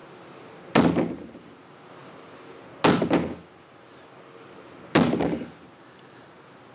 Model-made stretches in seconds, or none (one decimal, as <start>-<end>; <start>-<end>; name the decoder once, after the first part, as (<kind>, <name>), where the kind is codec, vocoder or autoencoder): none